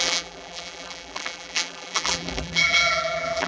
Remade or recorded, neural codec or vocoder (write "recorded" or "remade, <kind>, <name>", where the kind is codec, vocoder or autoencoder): remade, vocoder, BigVGAN v2